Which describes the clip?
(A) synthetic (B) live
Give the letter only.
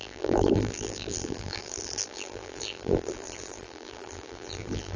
A